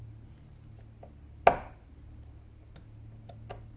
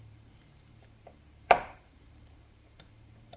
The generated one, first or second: second